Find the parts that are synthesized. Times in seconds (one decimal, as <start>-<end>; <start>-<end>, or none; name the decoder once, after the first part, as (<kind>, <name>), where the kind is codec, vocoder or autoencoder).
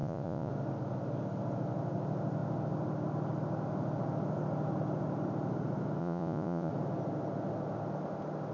0.0-0.5 (vocoder, Vocos); 6.0-6.7